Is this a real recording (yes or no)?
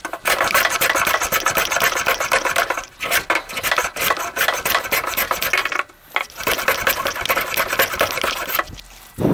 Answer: yes